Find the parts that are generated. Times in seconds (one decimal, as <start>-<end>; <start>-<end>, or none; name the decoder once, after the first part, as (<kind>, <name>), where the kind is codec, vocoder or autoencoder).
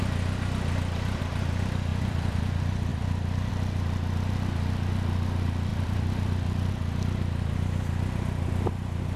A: 1.9-2.4 (vocoder, BigVGAN v2); 2.9-3.5; 5.7-6.7